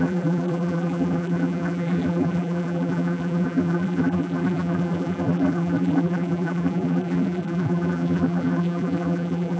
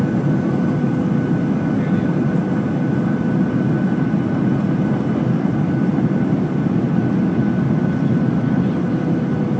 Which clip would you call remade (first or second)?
first